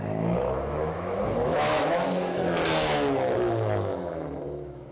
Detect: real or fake fake